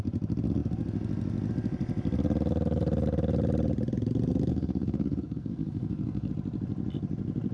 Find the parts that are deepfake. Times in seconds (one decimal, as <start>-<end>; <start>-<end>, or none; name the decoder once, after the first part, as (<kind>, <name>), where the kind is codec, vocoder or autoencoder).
4.5-6.3 (codec, SNAC)